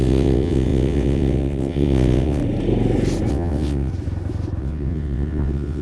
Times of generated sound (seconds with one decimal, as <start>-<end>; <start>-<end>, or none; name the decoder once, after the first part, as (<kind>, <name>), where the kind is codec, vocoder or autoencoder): 0.0-2.4 (vocoder, WaveNeXt); 3.3-3.9; 4.6-5.8

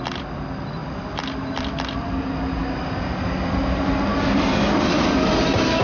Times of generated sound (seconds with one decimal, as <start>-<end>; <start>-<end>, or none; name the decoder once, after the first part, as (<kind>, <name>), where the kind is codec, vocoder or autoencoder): none

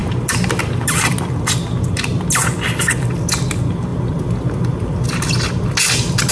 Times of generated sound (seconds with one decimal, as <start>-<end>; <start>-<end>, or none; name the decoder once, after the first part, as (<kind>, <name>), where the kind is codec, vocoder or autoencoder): none

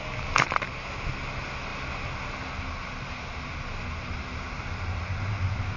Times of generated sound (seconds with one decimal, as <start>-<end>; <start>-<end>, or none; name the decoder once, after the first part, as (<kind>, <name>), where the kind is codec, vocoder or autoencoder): none

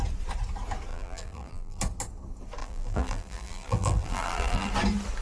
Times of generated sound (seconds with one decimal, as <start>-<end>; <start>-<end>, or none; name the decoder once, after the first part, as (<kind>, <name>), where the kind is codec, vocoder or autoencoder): 0.9-1.8 (vocoder, BigVGAN v2); 2.6-4.7

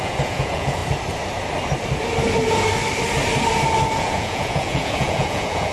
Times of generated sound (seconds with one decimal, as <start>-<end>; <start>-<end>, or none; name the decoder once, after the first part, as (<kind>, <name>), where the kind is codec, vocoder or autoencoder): 0.0-0.8 (vocoder, Vocos); 4.0-5.7

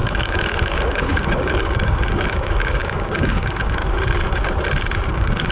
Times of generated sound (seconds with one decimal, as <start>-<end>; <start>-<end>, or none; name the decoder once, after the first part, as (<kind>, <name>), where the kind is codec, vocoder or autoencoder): 0.0-3.8 (codec, DAC); 5.1-5.5